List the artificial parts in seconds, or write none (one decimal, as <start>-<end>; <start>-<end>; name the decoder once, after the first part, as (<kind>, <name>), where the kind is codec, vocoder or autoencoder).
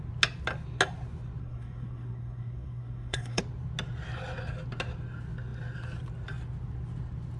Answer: 1.4-3.4 (codec, SNAC)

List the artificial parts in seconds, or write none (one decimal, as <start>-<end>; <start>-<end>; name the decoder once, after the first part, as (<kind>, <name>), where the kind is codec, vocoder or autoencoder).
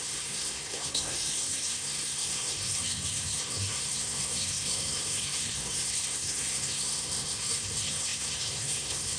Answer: 0.0-9.2 (codec, SNAC)